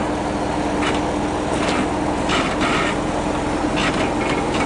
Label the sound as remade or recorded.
recorded